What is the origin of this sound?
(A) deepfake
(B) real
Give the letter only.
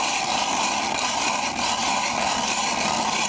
B